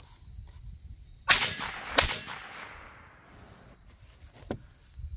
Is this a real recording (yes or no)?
yes